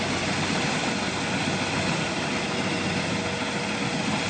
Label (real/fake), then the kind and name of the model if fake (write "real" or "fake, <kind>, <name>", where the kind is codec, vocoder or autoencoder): real